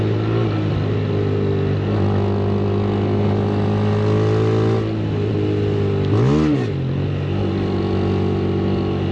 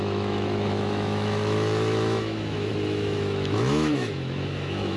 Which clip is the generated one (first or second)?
second